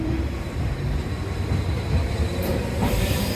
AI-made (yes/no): yes